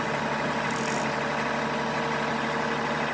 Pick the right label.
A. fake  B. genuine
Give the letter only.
B